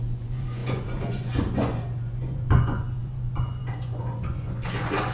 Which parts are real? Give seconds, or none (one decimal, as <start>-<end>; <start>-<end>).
none